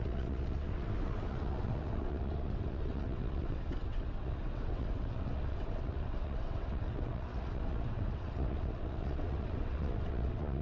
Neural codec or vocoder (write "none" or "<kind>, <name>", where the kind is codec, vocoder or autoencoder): vocoder, WaveNeXt